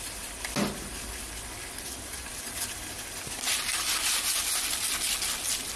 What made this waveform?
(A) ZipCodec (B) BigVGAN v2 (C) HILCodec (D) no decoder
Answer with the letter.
D